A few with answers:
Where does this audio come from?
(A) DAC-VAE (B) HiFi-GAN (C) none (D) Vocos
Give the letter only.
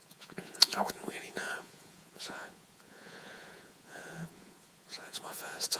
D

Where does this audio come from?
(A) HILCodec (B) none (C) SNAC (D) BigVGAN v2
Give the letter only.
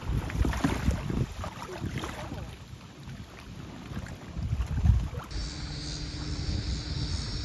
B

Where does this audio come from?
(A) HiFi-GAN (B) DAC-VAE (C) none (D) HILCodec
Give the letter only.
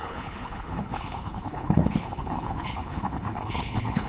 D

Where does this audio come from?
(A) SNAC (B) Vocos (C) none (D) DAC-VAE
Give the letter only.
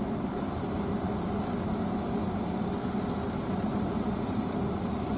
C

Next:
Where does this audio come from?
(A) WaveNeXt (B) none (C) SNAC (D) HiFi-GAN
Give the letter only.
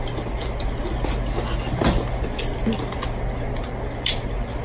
B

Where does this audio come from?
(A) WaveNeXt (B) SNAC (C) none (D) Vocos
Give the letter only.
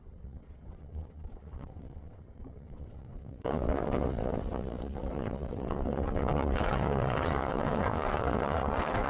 A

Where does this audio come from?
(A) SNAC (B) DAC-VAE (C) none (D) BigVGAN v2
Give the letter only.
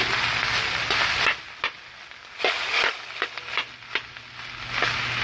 C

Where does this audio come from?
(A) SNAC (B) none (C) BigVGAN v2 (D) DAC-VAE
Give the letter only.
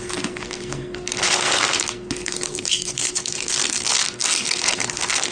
A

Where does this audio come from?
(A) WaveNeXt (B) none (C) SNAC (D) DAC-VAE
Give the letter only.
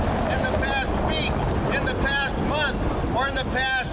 B